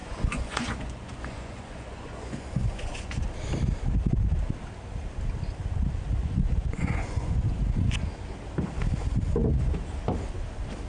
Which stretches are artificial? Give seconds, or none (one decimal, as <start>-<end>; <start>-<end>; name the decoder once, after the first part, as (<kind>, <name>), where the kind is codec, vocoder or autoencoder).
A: 0.0-3.2 (vocoder, Vocos); 6.2-7.9